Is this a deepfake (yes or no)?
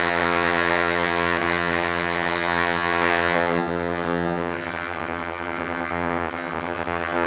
yes